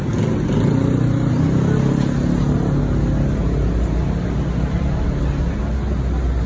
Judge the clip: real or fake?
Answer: real